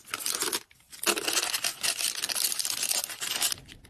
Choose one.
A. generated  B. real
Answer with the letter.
B